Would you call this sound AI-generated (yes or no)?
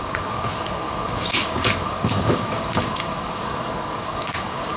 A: yes